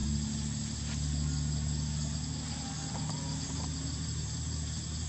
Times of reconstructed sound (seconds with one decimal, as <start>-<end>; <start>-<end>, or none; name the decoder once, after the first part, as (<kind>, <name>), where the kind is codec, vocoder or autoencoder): 3.1-5.1 (vocoder, BigVGAN v2)